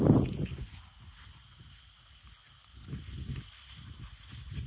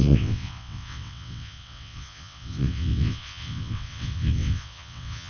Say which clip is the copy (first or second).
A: second